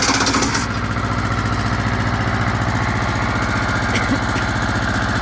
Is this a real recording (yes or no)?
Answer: yes